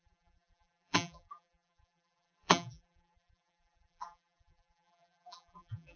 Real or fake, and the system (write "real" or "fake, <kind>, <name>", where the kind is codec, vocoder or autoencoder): fake, vocoder, BigVGAN v2